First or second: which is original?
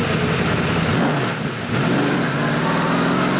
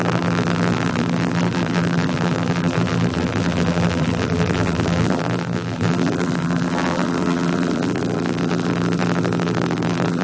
first